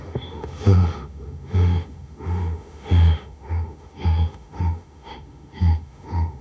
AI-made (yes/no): yes